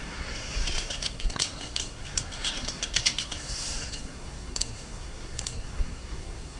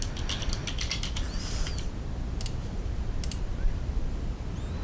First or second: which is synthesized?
first